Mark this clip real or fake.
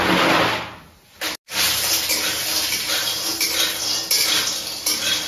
real